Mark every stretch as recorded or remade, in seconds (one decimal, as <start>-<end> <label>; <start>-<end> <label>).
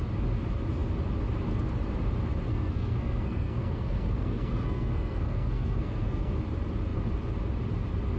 0.0-2.5 recorded; 2.5-6.3 remade; 6.3-8.2 recorded